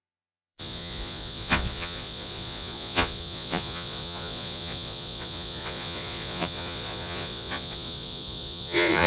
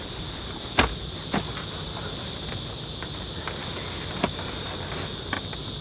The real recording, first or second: second